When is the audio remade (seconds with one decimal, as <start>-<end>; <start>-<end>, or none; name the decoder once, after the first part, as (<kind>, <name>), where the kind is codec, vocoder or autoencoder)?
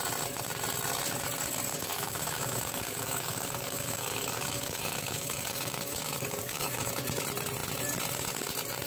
1.7-6.9 (codec, DAC)